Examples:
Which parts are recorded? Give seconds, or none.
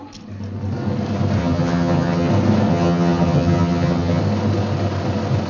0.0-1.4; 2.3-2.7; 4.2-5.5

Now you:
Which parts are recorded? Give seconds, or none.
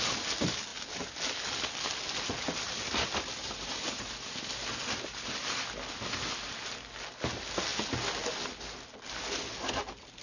0.0-10.2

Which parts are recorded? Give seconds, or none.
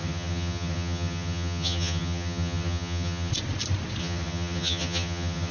3.3-4.0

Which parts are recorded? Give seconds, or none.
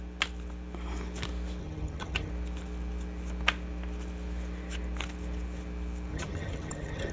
0.0-1.6; 2.3-6.1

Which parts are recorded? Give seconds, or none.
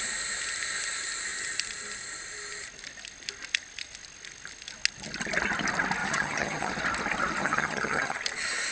0.0-6.0; 6.7-7.4; 8.2-8.7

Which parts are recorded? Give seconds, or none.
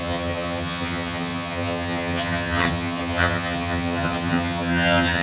none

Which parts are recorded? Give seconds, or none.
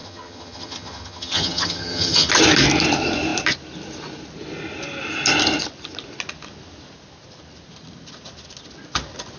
2.3-9.4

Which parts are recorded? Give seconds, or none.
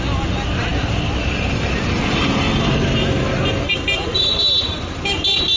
0.0-5.6